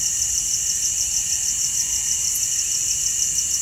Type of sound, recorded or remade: recorded